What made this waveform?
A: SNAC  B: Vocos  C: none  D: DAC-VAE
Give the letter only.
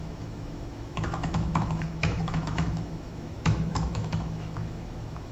D